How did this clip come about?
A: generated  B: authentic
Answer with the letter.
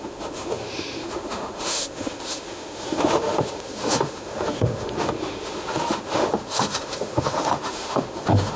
A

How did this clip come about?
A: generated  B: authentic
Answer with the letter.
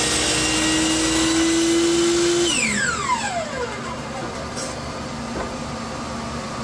B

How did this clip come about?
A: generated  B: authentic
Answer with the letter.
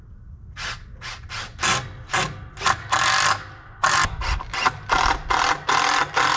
B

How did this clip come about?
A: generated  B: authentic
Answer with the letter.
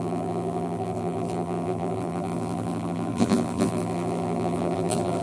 A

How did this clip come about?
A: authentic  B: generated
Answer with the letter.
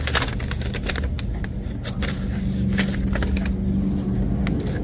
A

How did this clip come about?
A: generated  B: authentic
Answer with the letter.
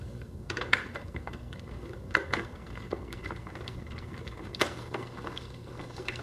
A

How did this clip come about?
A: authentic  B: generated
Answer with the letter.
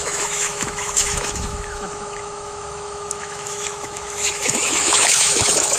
B